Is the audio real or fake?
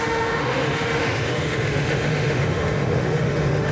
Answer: fake